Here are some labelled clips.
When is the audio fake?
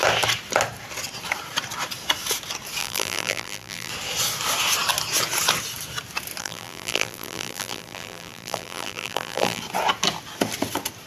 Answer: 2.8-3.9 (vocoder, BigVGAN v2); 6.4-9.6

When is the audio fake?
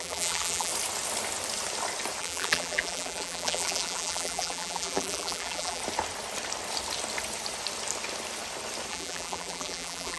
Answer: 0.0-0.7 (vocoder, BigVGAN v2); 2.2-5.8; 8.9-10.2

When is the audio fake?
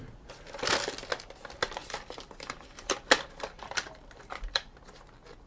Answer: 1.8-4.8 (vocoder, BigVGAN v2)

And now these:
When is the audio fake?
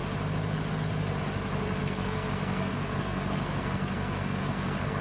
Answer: 1.8-5.0 (codec, SNAC)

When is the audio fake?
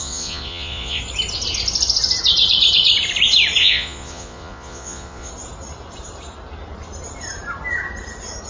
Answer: 0.0-1.0 (vocoder, Vocos); 3.6-5.3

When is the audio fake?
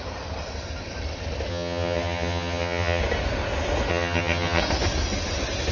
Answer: 1.5-3.0 (vocoder, HiFi-GAN); 3.9-4.6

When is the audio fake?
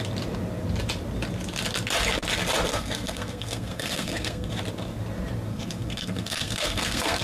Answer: 2.7-4.5 (codec, SNAC); 5.5-7.2